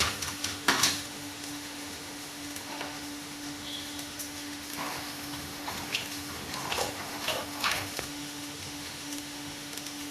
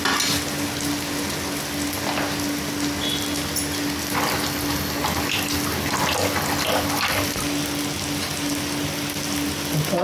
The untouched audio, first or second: second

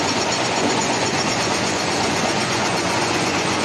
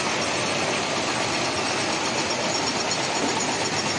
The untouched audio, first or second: second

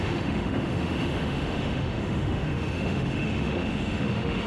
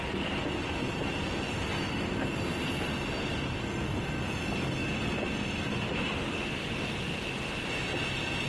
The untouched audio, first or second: second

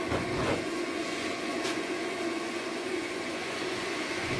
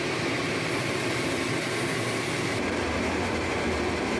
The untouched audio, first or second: second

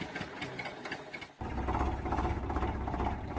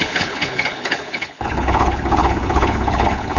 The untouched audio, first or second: first